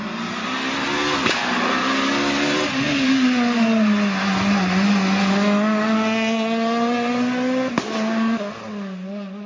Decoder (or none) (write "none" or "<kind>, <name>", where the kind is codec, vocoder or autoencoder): none